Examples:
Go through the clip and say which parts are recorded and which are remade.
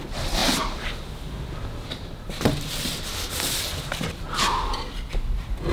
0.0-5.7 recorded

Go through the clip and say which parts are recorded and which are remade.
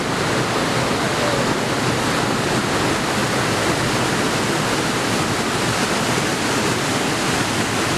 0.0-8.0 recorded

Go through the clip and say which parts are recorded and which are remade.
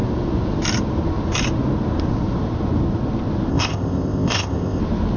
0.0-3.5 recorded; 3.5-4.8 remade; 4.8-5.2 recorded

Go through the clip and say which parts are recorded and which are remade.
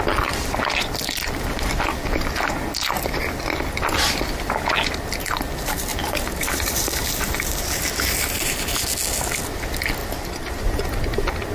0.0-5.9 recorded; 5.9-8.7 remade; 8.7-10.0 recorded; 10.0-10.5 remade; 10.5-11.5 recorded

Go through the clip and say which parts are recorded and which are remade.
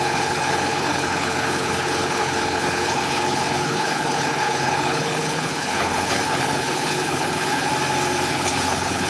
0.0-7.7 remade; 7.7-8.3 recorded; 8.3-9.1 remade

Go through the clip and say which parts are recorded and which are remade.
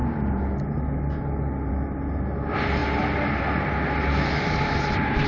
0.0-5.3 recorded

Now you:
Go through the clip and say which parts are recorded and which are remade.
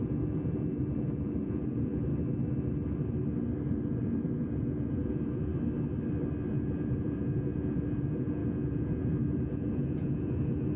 0.0-2.1 remade; 2.1-3.7 recorded; 3.7-5.5 remade; 5.5-6.5 recorded; 6.5-10.8 remade